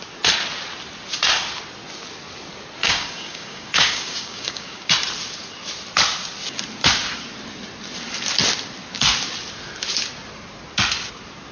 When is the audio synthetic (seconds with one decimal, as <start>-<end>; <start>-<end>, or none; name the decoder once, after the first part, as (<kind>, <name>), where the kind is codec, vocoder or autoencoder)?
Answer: 2.8-4.9 (codec, DAC)